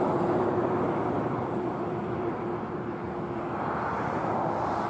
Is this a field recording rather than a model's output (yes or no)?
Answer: yes